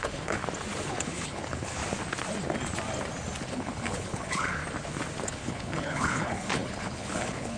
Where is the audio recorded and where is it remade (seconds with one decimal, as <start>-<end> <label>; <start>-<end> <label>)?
0.0-0.4 remade; 0.4-0.9 recorded; 0.9-1.8 remade; 1.8-3.5 recorded; 3.5-4.6 remade; 4.6-5.3 recorded; 5.3-7.6 remade